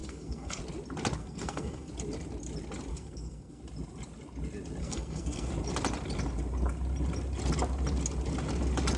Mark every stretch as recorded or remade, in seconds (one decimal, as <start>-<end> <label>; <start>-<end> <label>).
0.0-0.6 remade; 0.6-1.2 recorded; 1.2-1.9 remade; 1.9-2.9 recorded; 2.9-3.6 remade; 3.6-4.8 recorded; 4.8-5.5 remade; 5.5-9.0 recorded